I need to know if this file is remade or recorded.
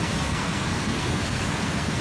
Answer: remade